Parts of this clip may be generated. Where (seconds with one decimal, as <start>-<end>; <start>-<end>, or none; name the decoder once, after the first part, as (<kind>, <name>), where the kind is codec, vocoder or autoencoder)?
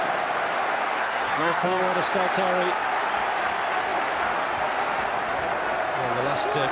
1.0-1.8 (codec, SNAC)